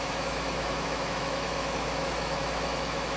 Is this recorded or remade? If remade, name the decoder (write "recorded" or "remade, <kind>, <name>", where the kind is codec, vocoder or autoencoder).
remade, autoencoder, DAC-VAE